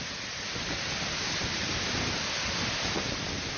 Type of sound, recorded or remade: recorded